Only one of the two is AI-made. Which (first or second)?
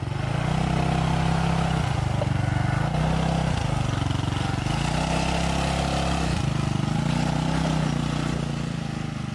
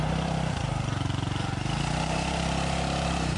second